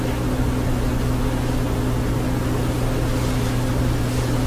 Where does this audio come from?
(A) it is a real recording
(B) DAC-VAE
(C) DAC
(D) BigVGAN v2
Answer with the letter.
A